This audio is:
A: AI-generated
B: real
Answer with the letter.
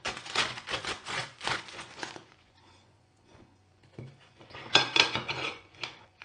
A